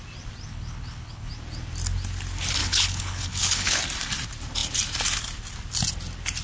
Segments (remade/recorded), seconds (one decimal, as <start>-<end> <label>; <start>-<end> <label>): 0.0-0.5 recorded; 0.5-1.3 remade; 1.3-2.6 recorded; 2.6-3.8 remade; 3.8-6.4 recorded